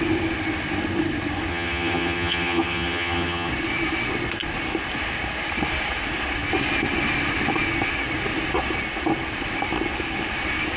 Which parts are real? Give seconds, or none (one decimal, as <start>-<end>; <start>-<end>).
0.0-1.5; 3.5-10.8